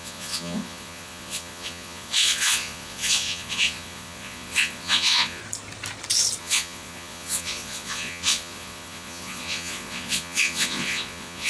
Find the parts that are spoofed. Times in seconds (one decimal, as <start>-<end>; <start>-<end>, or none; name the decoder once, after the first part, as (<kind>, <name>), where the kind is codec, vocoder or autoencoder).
0.0-5.4 (vocoder, Vocos); 6.4-11.5